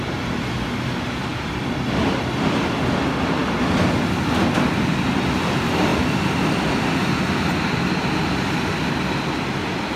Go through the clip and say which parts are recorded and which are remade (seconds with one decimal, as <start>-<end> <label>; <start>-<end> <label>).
0.0-1.3 recorded; 1.3-2.8 remade; 2.8-5.9 recorded; 5.9-6.9 remade; 6.9-10.0 recorded